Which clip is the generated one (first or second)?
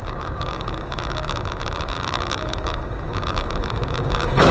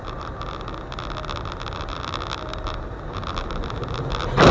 first